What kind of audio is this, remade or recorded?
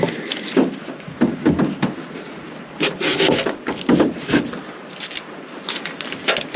recorded